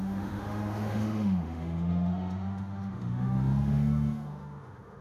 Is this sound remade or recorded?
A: remade